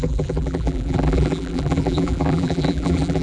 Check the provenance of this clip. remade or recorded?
remade